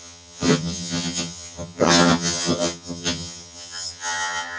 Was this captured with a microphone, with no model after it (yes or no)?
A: no